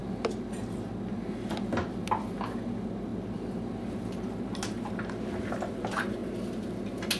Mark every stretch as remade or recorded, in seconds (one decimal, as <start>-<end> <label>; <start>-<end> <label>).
0.0-7.2 recorded